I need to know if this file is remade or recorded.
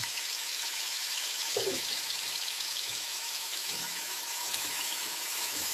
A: remade